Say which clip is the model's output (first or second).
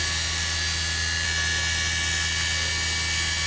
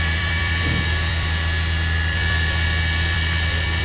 second